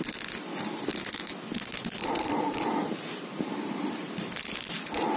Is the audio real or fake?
fake